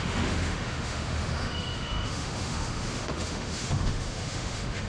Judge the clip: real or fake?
fake